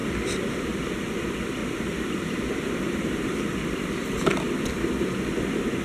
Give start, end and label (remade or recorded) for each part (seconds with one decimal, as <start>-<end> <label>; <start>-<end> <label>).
0.0-0.8 remade; 0.8-1.6 recorded; 1.6-4.3 remade; 4.3-5.8 recorded